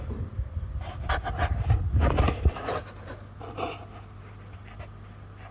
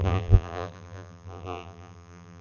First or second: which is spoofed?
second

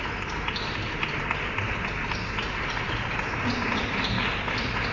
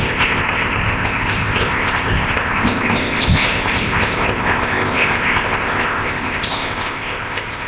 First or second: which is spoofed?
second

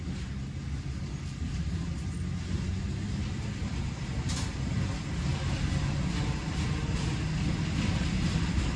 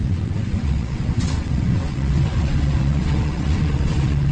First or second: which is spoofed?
second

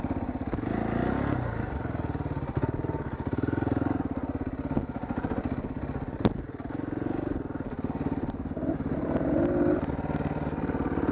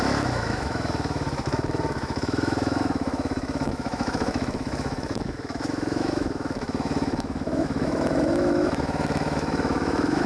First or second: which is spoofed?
second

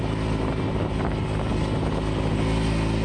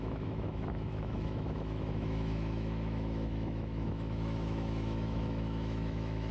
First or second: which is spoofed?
second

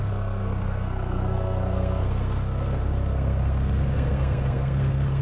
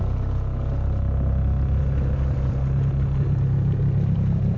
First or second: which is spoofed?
first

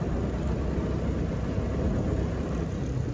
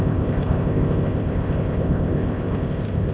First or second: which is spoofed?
second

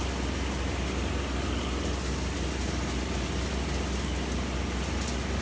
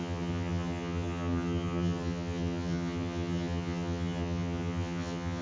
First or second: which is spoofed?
second